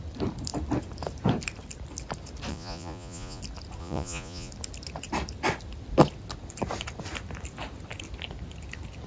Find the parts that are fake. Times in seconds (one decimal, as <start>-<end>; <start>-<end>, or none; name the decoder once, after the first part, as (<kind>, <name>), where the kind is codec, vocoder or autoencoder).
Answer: 2.5-3.4 (vocoder, Vocos); 3.8-4.5